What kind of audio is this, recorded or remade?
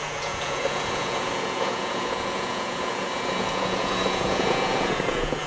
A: remade